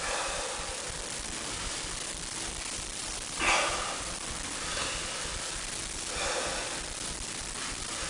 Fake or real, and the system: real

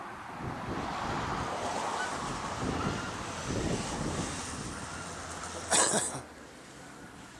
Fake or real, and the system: real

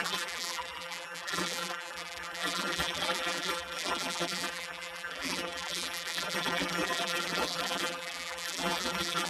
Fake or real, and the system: fake, vocoder, BigVGAN v2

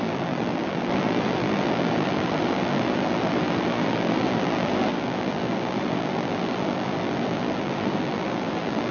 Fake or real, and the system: fake, vocoder, BigVGAN v2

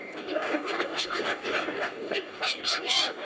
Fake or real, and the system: fake, codec, DAC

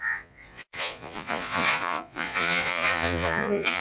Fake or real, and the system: fake, vocoder, Vocos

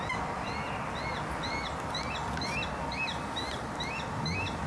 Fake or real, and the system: real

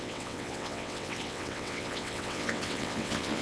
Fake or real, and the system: fake, vocoder, WaveNeXt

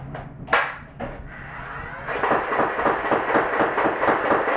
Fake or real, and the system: real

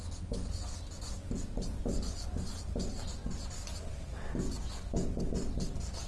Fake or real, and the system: real